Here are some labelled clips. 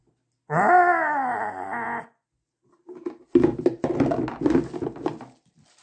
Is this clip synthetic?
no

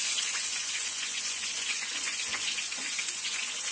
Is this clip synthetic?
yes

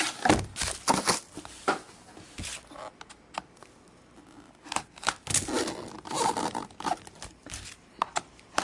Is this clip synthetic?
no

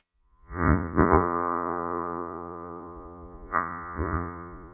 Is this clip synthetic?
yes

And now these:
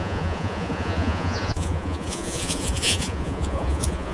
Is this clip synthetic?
yes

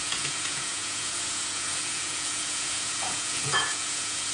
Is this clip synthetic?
yes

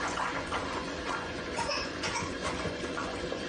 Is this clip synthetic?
yes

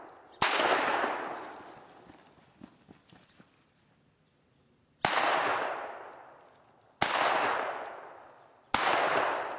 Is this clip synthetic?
no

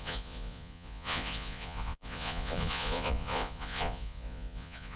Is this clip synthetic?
yes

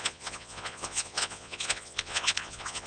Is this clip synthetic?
yes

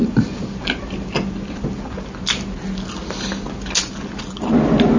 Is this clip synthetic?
no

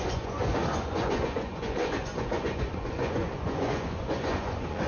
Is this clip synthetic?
yes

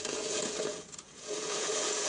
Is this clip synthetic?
yes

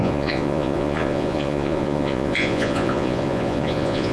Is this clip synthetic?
yes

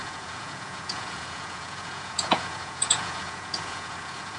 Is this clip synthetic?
yes